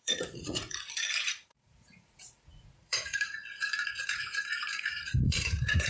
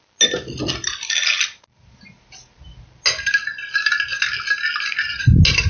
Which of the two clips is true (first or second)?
second